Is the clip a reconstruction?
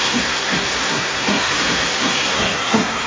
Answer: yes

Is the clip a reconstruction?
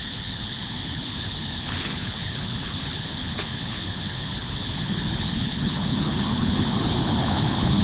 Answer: yes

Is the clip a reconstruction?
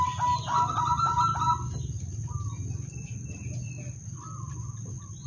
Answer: no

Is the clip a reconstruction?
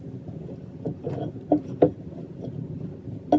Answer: no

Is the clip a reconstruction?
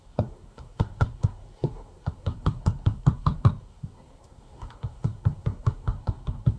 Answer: yes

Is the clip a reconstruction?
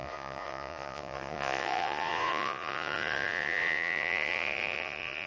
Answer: yes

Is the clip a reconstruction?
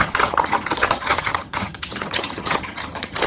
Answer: yes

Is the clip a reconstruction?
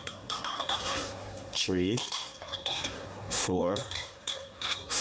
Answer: yes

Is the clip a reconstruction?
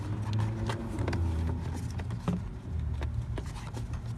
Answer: no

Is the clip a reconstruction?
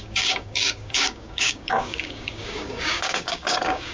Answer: yes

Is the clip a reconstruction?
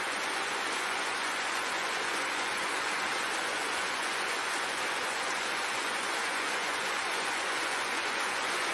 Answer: yes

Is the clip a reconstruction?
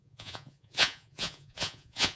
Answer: yes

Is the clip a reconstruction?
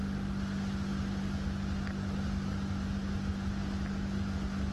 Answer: no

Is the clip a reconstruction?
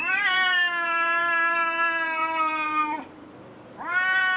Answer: yes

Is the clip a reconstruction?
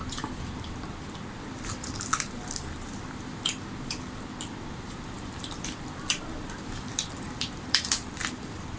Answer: yes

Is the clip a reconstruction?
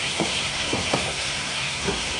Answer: yes